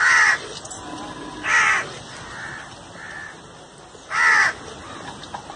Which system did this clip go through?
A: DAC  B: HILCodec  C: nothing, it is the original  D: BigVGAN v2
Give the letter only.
C